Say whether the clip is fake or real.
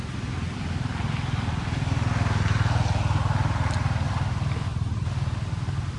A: real